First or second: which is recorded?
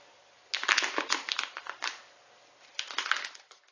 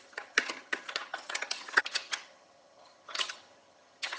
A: first